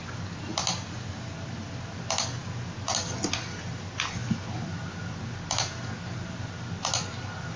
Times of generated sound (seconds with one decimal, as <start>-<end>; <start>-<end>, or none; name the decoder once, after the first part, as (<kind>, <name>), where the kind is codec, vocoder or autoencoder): none